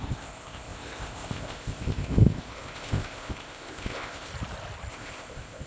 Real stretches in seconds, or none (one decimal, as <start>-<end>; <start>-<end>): 4.3-4.9